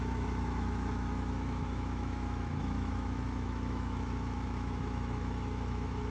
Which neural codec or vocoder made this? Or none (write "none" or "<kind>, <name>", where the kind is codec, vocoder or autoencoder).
autoencoder, DAC-VAE